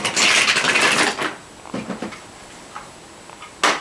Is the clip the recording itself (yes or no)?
yes